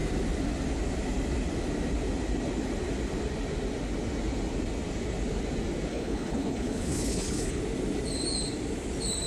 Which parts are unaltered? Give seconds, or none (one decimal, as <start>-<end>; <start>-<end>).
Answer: 0.0-5.9; 7.6-9.3